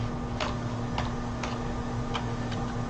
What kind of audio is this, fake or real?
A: real